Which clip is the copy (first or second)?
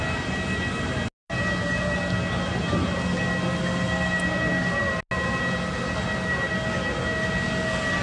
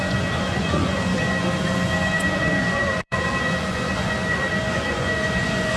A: second